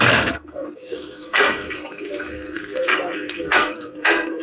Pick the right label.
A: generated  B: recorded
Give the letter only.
A